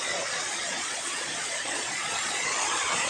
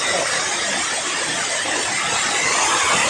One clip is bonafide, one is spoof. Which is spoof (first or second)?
first